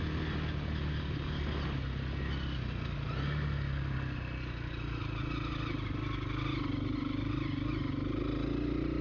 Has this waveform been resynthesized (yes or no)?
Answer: no